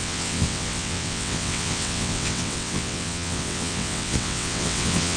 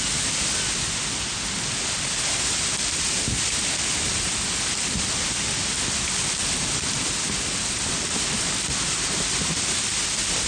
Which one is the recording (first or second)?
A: second